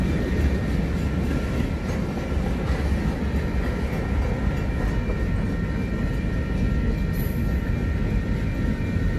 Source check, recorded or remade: recorded